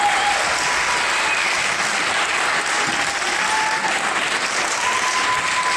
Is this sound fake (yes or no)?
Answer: no